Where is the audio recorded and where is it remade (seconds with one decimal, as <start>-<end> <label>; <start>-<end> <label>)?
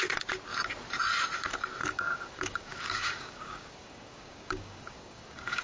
0.0-1.8 recorded; 1.8-5.6 remade